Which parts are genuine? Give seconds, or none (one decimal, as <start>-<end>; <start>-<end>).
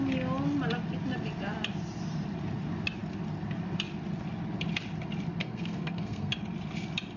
0.0-5.4; 6.3-7.2